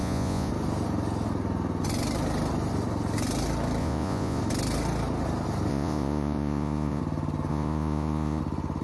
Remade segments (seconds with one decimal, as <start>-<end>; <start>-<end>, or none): 0.0-0.5; 3.8-4.4; 5.7-7.0; 7.5-8.4